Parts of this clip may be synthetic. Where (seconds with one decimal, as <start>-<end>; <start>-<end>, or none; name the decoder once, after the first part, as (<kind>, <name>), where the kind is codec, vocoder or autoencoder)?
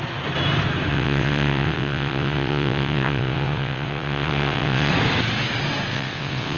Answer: 0.9-4.9 (vocoder, WaveNeXt); 5.9-6.6